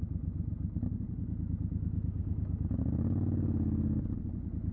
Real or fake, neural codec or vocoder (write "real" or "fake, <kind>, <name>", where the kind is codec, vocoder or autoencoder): real